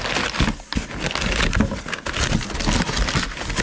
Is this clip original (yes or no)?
yes